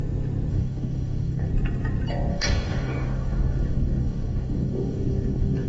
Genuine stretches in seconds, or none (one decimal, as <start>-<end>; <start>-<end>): 0.0-0.5; 1.5-2.3